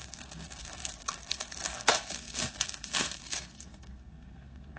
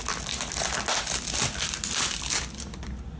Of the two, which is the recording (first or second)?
second